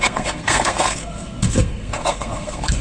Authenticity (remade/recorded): remade